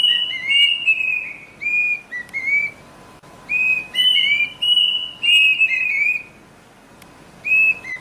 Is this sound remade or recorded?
recorded